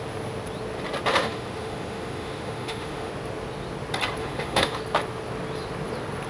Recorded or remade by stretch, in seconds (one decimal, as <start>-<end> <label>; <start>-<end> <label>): 0.0-1.1 recorded; 1.1-3.1 remade; 3.1-4.2 recorded; 4.2-4.8 remade; 4.8-6.3 recorded